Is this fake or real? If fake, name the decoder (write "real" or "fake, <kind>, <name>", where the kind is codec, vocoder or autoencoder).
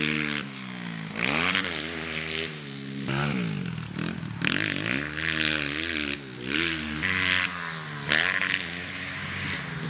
real